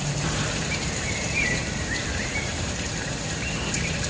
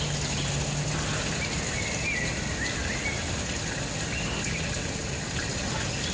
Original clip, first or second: second